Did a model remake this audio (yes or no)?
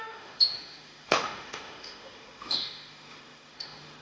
yes